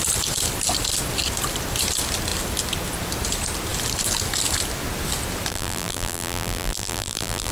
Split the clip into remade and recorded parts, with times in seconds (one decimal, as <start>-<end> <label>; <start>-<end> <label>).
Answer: 0.0-5.5 recorded; 5.5-7.5 remade